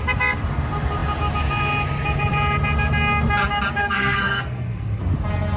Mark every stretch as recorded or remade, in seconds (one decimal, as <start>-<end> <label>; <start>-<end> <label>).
0.0-3.8 recorded; 3.8-5.0 remade; 5.0-5.6 recorded